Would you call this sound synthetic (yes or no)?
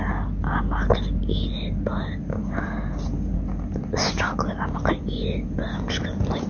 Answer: no